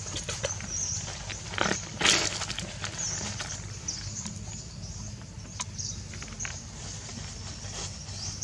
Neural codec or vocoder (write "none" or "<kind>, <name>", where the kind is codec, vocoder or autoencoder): none